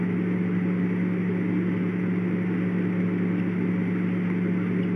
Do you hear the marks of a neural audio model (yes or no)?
no